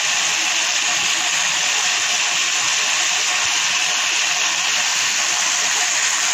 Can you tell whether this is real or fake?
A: real